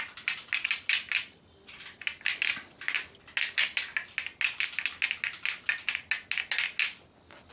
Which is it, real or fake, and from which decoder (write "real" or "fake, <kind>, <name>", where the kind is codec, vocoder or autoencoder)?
real